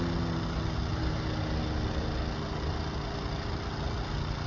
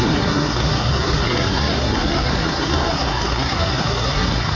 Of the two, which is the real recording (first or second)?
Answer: first